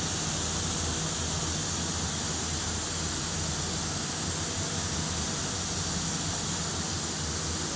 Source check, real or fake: real